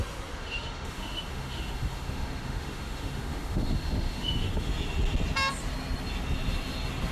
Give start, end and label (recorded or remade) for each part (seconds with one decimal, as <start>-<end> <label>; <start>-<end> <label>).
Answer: 0.0-0.4 recorded; 0.4-4.7 remade; 4.7-7.1 recorded